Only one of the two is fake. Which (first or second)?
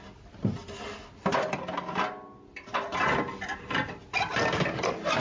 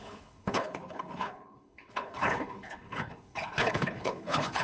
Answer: second